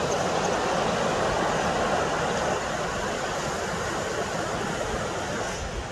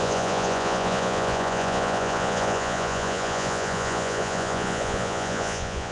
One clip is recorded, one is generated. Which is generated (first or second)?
second